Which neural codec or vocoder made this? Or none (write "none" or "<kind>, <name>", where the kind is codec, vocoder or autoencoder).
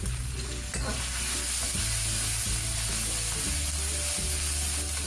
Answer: none